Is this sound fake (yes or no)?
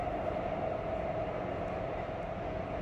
no